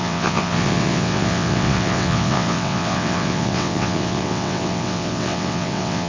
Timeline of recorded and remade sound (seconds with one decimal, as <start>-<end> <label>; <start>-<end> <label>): 0.0-6.1 remade